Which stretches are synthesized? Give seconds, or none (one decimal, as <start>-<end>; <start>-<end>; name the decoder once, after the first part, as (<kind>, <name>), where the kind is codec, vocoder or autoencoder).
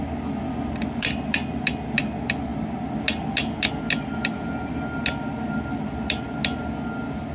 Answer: none